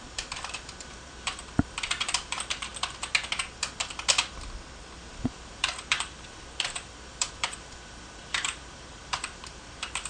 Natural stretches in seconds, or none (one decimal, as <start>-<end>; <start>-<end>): 2.7-5.0